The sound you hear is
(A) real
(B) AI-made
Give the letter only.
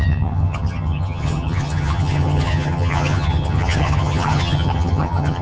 B